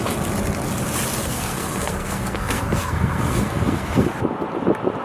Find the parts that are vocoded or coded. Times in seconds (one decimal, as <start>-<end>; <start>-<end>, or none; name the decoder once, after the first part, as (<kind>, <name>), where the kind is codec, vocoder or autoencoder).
1.2-4.1 (codec, SNAC)